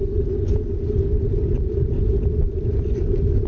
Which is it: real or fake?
real